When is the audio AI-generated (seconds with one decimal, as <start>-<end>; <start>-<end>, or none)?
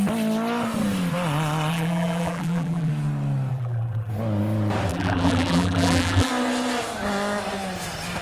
1.7-2.9; 3.5-4.1; 4.9-6.3